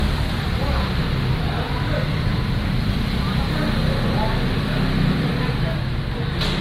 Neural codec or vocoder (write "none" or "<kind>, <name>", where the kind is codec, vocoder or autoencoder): none